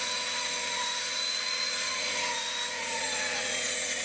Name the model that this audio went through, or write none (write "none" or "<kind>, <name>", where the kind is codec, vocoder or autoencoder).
vocoder, Vocos